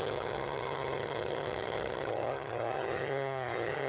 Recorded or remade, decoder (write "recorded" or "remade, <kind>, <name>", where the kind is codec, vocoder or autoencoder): remade, vocoder, HiFi-GAN